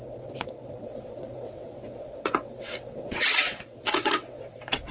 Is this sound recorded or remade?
remade